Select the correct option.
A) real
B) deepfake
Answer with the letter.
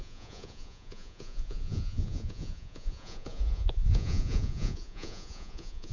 B